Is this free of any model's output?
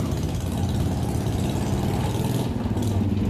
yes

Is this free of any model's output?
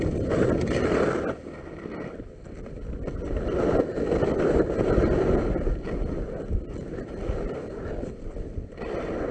yes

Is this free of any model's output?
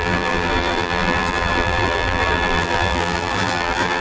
no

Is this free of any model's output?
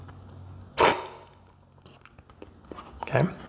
yes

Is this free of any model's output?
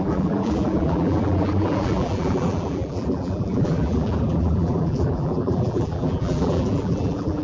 no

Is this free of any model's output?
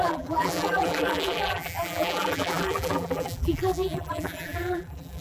no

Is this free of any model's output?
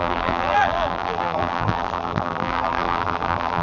no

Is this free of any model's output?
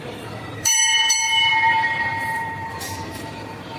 no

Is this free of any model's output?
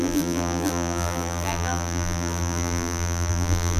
no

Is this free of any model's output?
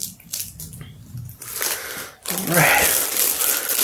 yes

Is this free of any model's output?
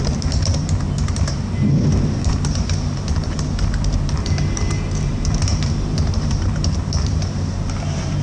no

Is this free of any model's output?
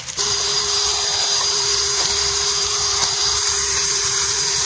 no